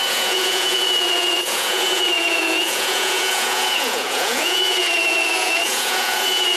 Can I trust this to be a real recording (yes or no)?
no